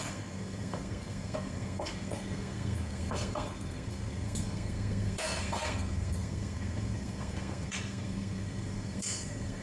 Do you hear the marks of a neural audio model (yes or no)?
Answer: yes